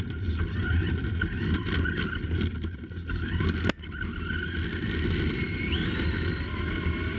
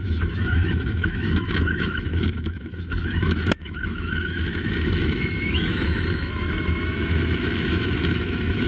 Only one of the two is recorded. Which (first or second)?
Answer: first